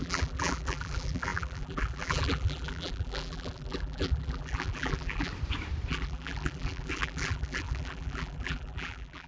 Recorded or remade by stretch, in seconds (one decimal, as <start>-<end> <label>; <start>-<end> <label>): 0.0-5.3 remade; 5.3-5.9 recorded; 5.9-9.3 remade